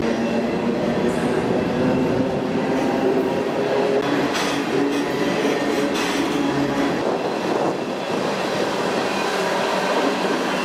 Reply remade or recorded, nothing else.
recorded